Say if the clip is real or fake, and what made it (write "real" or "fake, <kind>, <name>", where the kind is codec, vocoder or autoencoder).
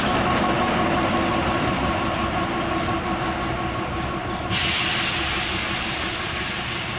real